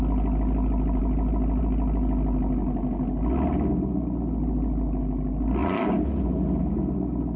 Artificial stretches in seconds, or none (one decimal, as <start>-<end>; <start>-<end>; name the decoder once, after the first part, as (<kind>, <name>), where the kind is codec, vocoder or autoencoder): none